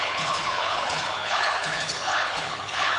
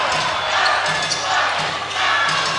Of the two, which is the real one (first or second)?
second